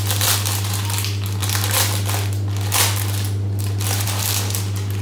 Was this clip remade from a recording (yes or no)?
no